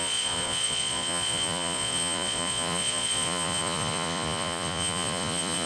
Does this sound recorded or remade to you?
remade